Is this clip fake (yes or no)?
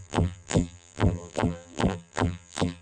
yes